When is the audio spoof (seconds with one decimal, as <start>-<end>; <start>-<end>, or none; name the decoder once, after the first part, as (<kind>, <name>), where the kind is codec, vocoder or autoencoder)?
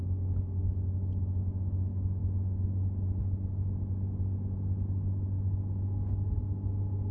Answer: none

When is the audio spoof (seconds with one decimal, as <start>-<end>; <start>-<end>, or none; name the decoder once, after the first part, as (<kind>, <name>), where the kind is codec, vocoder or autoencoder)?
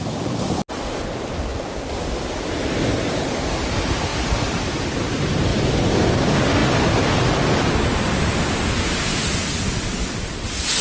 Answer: none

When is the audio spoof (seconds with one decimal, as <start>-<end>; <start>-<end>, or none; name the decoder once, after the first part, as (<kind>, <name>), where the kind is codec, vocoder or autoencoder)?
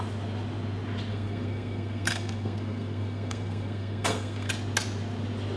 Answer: 1.1-4.5 (codec, SNAC)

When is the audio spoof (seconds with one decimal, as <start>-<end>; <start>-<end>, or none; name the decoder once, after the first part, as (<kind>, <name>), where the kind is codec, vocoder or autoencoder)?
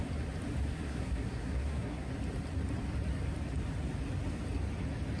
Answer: 0.7-2.1 (codec, SNAC)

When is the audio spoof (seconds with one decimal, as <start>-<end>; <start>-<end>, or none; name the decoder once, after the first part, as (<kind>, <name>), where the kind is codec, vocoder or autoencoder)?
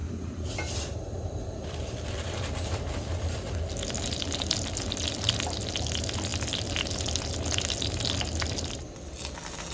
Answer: 0.0-0.5 (vocoder, BigVGAN v2); 0.9-1.8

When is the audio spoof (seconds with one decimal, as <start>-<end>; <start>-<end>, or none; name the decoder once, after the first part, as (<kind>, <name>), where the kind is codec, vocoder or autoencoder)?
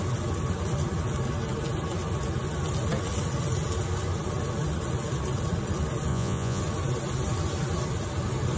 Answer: 6.1-6.6 (vocoder, Vocos)